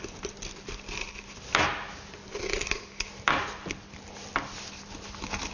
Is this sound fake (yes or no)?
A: no